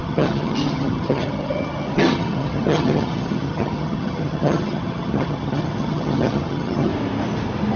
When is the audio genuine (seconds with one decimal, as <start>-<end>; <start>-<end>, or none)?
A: 6.9-7.8

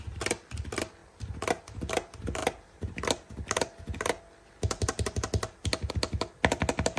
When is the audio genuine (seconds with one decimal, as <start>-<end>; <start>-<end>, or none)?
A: 0.0-7.0